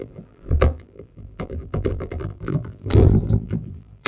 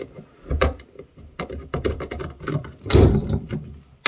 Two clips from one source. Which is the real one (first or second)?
second